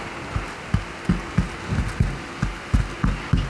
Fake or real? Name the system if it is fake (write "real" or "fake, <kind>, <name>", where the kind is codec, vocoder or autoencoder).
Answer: real